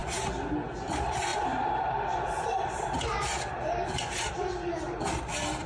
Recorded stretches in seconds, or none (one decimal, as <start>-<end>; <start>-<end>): 0.0-0.9